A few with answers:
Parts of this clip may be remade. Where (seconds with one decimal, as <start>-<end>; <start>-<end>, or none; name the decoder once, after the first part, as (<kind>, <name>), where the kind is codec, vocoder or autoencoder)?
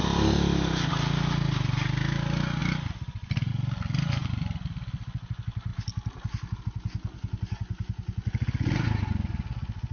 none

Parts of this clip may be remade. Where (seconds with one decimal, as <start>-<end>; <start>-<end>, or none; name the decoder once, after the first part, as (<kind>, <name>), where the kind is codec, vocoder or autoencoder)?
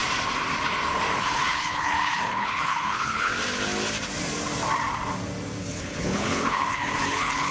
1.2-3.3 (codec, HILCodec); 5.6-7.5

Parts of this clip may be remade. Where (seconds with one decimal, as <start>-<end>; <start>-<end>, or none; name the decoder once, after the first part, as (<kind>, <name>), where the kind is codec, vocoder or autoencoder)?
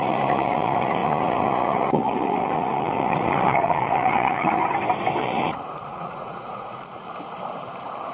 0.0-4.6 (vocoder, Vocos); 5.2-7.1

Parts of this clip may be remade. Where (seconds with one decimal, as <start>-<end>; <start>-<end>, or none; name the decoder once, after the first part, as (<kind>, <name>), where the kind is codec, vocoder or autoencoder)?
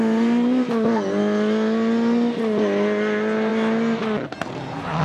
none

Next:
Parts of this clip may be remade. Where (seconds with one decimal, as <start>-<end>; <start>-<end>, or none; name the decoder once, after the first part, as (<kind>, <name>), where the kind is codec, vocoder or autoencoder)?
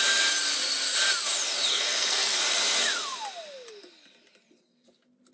1.7-2.4 (codec, SNAC)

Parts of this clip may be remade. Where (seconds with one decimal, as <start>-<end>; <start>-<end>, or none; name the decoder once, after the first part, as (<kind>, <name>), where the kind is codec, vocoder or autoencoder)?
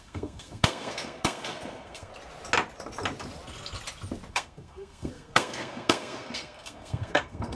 0.0-2.1 (codec, SNAC); 4.3-7.6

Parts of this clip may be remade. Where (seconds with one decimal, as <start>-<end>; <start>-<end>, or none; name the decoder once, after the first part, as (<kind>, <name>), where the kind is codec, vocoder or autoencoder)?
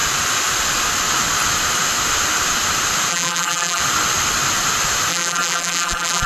3.1-3.8 (vocoder, BigVGAN v2); 5.1-6.3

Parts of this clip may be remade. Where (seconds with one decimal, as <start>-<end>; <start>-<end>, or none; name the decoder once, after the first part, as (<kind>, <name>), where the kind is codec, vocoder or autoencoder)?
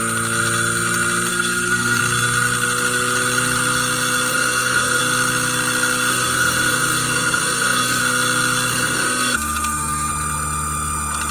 1.3-2.0 (codec, SNAC); 4.3-5.0; 6.1-8.0; 8.7-10.1